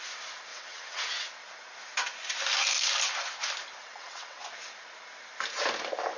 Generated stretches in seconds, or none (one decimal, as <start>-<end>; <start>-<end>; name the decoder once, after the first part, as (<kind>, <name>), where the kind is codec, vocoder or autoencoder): 0.5-1.1 (vocoder, WaveNeXt); 3.8-4.4